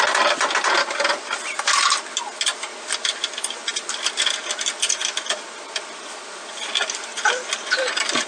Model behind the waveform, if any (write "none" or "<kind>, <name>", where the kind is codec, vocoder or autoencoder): none